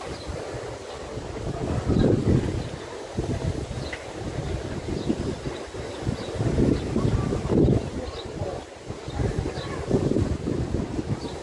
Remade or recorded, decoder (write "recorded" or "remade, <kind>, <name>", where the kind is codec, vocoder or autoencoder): recorded